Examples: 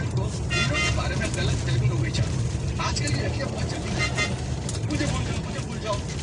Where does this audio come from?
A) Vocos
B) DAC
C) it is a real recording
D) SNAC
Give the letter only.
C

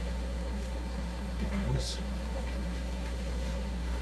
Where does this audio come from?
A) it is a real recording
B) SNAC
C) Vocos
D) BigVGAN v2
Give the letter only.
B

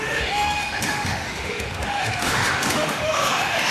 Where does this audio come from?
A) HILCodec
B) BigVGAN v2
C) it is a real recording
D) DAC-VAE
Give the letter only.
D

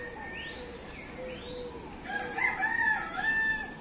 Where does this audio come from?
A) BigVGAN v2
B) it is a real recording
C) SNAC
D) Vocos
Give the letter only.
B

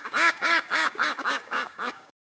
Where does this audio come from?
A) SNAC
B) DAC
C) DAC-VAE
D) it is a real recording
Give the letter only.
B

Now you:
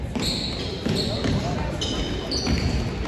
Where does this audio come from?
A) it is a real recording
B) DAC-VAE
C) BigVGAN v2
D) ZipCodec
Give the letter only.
A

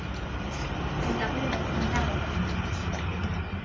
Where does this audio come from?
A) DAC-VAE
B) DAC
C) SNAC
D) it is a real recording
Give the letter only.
D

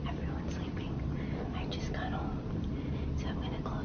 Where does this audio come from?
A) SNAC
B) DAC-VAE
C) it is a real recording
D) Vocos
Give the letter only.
C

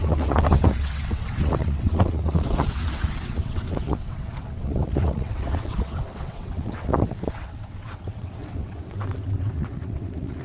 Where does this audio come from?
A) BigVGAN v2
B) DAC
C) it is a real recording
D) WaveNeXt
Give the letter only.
D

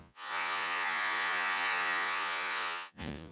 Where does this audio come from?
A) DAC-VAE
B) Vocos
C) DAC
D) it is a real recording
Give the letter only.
B